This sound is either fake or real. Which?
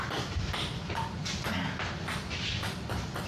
real